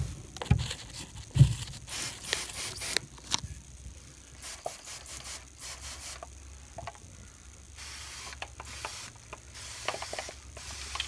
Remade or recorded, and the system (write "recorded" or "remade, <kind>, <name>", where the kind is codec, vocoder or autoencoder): recorded